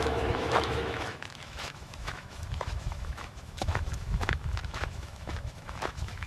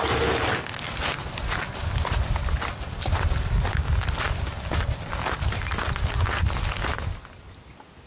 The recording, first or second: second